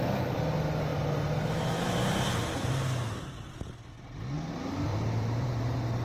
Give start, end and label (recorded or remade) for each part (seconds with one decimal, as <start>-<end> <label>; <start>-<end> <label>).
0.0-4.9 recorded; 4.9-5.6 remade; 5.6-6.0 recorded